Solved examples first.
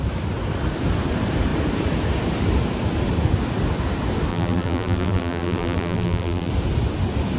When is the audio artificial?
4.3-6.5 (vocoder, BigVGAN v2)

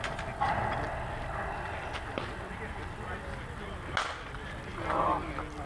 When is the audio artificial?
none

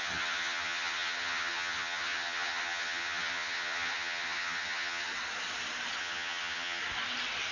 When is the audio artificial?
0.0-5.1 (vocoder, HiFi-GAN); 6.0-6.8